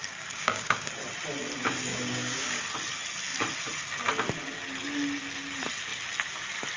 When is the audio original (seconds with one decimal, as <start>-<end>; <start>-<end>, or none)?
0.9-1.9; 2.6-6.8